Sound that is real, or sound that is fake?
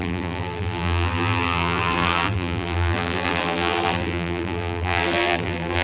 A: fake